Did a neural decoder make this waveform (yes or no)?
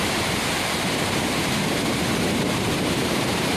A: yes